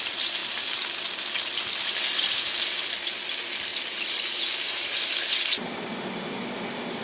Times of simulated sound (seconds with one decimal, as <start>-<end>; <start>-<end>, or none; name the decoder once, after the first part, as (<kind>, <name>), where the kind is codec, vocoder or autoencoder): none